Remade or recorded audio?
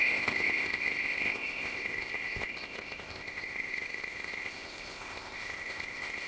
remade